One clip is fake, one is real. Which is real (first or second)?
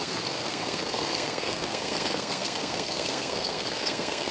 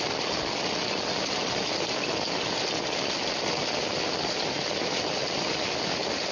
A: second